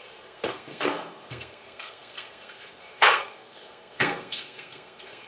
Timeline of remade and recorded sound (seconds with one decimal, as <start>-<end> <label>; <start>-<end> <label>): 0.0-5.3 remade